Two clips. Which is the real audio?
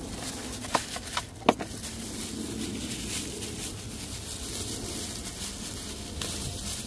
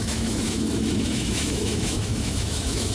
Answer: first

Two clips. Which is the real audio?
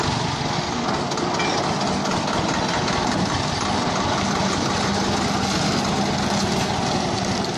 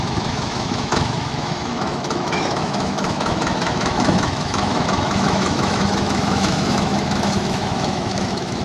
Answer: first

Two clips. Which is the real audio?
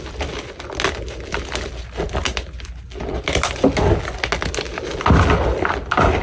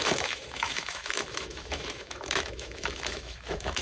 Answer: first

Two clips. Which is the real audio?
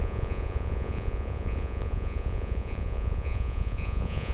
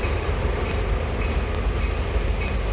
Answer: second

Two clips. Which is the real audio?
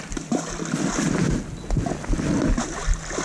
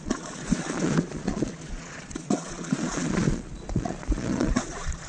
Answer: first